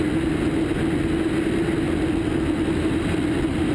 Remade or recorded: recorded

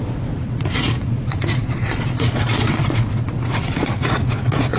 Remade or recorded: remade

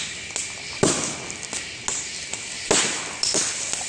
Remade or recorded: recorded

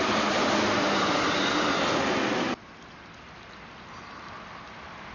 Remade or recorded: recorded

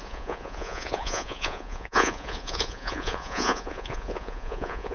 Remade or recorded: remade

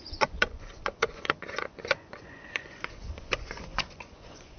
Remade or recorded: remade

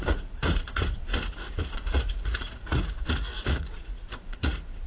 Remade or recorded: remade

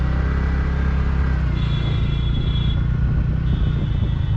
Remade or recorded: recorded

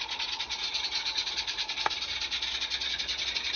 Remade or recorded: recorded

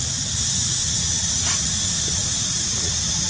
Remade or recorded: remade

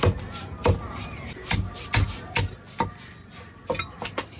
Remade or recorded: recorded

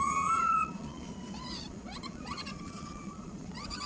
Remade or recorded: remade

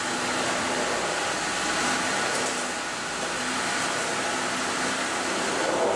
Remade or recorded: recorded